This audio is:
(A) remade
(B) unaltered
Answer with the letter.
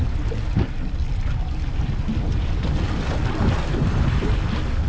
B